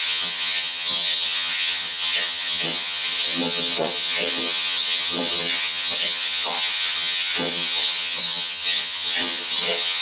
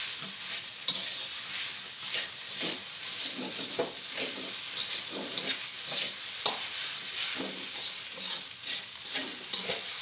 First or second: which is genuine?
second